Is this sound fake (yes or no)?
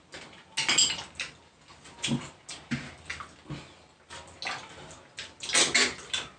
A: no